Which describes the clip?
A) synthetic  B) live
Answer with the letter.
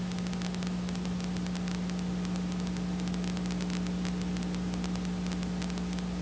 B